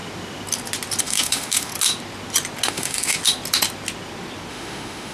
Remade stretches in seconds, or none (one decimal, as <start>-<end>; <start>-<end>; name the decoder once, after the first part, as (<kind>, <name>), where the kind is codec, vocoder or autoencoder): 1.0-1.7 (autoencoder, DAC-VAE); 2.7-3.2; 4.5-5.1